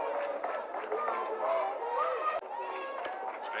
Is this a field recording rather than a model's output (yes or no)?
yes